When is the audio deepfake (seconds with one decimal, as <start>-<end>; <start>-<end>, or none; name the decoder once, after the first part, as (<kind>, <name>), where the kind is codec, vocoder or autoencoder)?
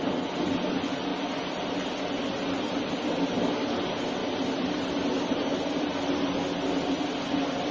none